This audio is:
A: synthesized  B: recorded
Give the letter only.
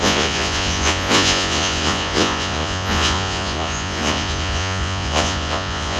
A